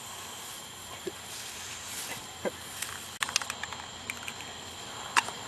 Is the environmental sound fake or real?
real